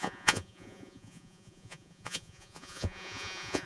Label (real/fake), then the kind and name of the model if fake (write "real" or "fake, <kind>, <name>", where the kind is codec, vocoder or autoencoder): fake, vocoder, Vocos